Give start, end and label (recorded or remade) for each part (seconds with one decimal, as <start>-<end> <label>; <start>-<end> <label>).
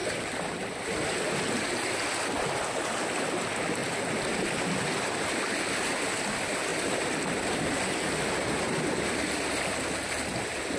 0.0-1.3 remade; 1.3-3.8 recorded; 3.8-5.2 remade; 5.2-6.7 recorded; 6.7-9.2 remade; 9.2-10.8 recorded